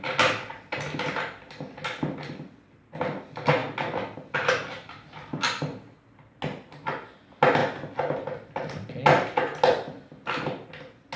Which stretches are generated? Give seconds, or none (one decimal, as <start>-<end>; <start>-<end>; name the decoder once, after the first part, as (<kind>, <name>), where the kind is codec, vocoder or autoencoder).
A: none